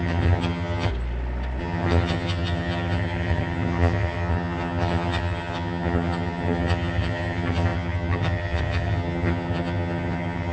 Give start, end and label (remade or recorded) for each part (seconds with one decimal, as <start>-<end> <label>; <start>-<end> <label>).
0.0-0.9 remade; 0.9-1.6 recorded; 1.6-10.5 remade